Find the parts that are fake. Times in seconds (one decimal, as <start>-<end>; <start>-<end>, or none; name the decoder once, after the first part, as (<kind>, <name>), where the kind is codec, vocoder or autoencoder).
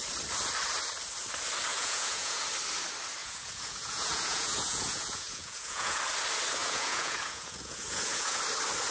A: 1.7-2.4 (vocoder, Vocos); 3.2-6.0; 6.6-8.4